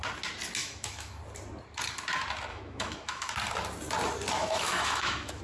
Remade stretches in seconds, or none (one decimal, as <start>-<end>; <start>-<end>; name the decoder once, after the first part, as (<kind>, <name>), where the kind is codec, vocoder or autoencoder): 0.6-1.2 (autoencoder, DAC-VAE); 2.5-3.3; 4.4-5.4